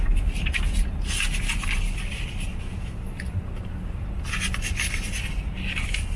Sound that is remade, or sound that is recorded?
recorded